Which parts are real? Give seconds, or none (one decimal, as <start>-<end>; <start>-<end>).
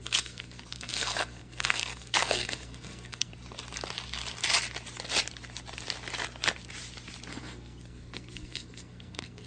3.3-7.3